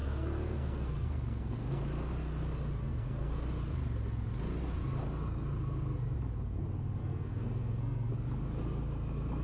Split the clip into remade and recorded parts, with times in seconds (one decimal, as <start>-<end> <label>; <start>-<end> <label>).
0.0-1.8 remade; 1.8-2.8 recorded; 2.8-3.4 remade; 3.4-7.0 recorded; 7.0-8.1 remade; 8.1-9.4 recorded